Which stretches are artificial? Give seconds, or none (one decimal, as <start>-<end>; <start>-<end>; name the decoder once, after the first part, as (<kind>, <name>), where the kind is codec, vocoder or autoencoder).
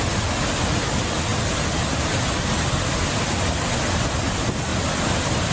none